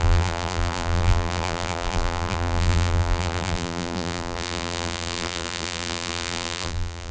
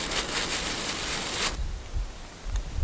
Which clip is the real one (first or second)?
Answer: second